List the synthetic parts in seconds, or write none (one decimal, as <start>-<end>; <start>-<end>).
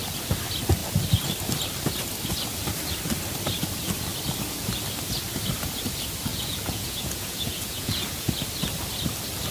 6.3-8.3